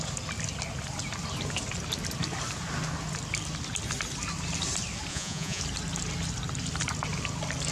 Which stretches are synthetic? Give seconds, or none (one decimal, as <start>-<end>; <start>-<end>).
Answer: 5.1-5.6